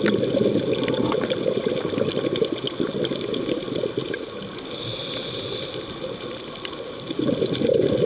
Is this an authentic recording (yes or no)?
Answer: yes